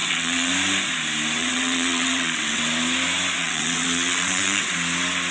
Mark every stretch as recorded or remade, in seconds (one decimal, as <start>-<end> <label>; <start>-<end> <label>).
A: 0.0-0.5 remade; 0.5-1.4 recorded; 1.4-2.6 remade; 2.6-3.4 recorded; 3.4-4.7 remade; 4.7-5.3 recorded